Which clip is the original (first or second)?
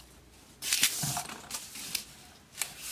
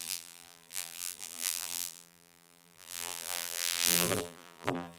first